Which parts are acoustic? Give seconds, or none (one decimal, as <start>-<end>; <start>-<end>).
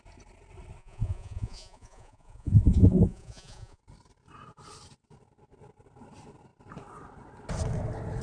0.0-0.8; 3.8-8.2